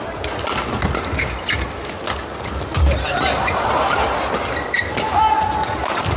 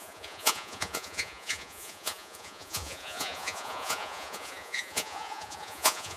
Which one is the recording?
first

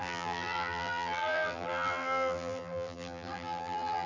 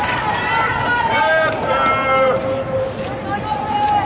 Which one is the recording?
second